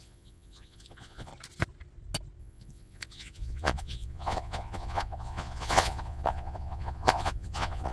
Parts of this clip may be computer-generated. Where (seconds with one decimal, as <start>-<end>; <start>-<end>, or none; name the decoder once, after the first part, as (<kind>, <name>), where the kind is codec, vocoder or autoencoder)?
0.0-1.3 (vocoder, Vocos); 2.4-7.9